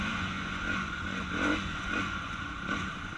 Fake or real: fake